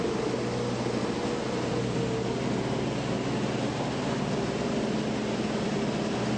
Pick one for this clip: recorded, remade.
recorded